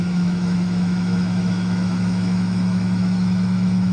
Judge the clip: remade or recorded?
remade